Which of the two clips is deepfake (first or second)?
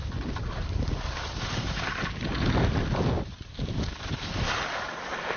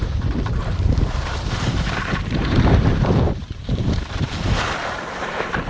second